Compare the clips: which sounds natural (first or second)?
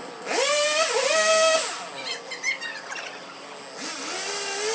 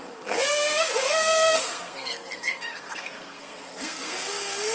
first